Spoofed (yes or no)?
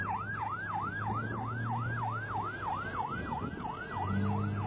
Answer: no